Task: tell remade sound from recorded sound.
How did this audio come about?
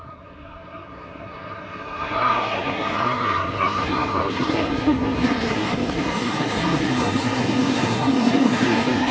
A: remade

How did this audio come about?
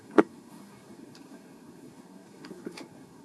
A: remade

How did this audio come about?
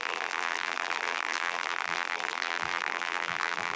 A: remade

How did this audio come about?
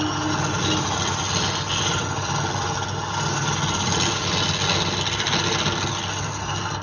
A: recorded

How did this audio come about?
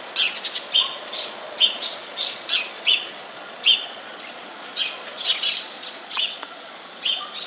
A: remade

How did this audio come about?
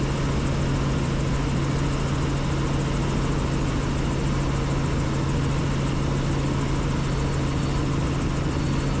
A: recorded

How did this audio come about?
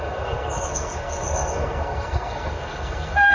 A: remade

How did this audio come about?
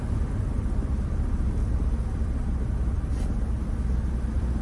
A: recorded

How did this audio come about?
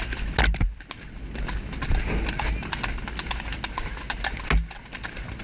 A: recorded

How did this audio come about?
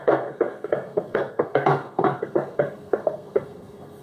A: remade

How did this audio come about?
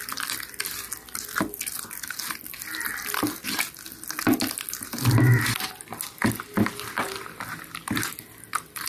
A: recorded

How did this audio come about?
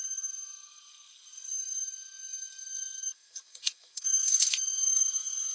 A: remade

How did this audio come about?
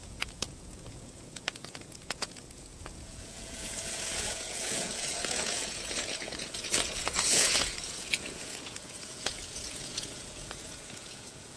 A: remade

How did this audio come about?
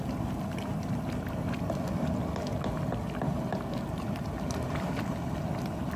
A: recorded